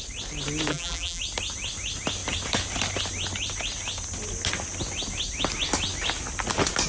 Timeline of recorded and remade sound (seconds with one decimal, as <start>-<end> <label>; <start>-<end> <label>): 0.0-0.7 recorded; 0.7-1.2 remade; 1.2-6.9 recorded